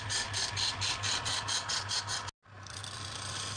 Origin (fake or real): real